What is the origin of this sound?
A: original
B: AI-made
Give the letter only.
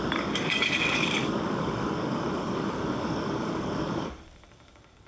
B